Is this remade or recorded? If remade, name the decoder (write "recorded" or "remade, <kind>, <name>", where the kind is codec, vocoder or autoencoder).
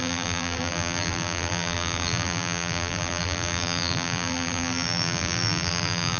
remade, vocoder, BigVGAN v2